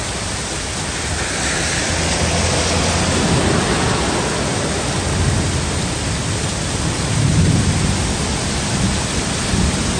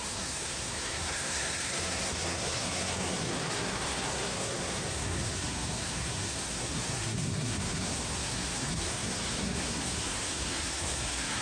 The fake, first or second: second